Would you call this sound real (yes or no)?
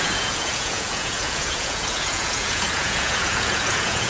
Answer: no